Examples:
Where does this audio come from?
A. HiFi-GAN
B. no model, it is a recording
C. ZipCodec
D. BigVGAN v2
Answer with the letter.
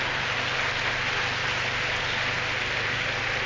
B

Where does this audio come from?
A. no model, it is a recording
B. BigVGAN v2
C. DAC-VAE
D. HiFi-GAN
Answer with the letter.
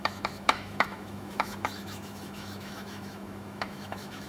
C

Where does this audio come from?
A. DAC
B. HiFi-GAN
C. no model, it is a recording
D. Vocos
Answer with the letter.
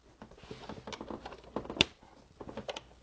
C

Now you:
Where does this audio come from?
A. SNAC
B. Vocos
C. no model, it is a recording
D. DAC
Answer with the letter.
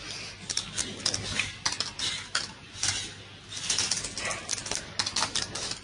C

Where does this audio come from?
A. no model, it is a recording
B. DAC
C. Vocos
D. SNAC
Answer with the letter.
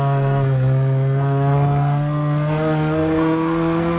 D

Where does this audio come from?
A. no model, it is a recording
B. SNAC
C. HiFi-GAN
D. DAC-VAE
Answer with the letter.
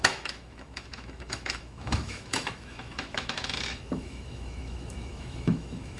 D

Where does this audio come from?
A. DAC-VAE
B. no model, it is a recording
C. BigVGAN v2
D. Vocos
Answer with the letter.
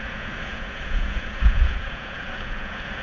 D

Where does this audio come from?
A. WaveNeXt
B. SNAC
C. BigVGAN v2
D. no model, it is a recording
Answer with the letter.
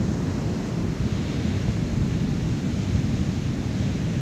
D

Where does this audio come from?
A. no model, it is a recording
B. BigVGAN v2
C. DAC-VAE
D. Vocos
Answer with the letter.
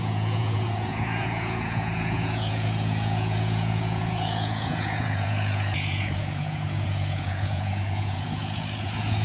D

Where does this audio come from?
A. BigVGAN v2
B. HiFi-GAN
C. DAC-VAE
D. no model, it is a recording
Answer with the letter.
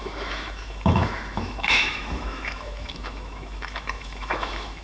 C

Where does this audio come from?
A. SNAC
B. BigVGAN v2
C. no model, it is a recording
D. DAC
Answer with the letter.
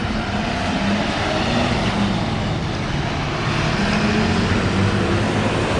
C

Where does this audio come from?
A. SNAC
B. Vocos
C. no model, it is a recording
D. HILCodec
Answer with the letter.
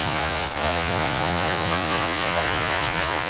B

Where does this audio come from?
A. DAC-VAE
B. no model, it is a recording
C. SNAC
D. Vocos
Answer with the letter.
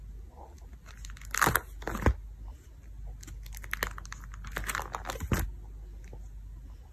B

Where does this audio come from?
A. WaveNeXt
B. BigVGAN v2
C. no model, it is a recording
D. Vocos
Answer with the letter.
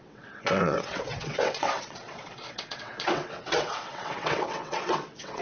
A